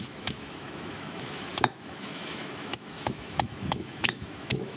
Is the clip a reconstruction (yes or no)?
yes